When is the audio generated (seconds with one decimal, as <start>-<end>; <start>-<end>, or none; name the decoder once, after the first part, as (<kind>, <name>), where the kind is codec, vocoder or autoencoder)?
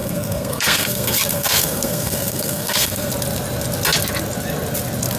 0.0-3.1 (codec, SNAC)